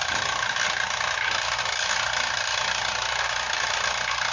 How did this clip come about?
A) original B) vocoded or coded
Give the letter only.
A